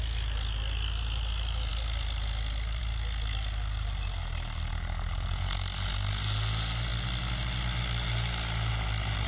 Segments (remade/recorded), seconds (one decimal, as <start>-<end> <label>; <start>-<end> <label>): 0.0-9.3 recorded